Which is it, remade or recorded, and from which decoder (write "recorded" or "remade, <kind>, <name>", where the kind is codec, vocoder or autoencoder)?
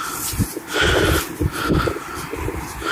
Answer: remade, vocoder, BigVGAN v2